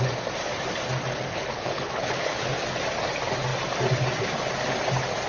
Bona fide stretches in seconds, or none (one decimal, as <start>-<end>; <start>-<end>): 0.0-1.3; 2.5-5.3